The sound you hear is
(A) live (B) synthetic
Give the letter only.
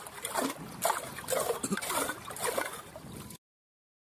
A